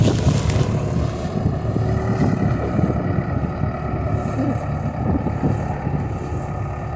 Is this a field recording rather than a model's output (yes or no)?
yes